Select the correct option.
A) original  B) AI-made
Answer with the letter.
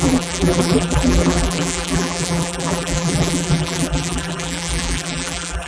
B